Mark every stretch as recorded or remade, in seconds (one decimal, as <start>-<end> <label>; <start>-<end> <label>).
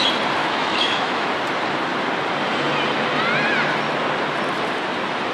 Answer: 0.0-0.4 recorded; 0.4-1.3 remade; 1.3-5.3 recorded